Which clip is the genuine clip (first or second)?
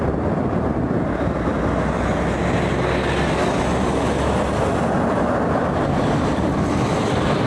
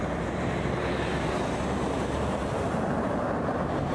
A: first